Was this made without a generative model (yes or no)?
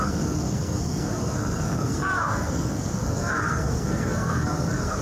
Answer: no